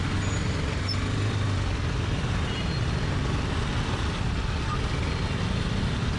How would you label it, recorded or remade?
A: recorded